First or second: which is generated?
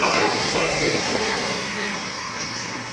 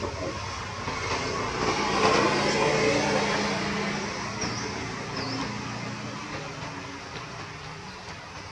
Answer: first